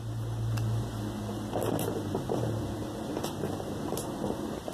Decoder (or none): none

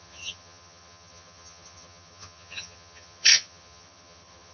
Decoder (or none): vocoder, HiFi-GAN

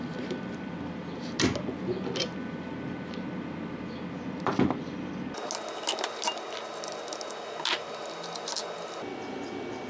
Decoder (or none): none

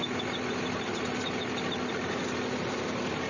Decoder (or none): none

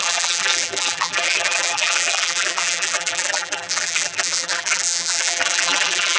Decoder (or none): vocoder, BigVGAN v2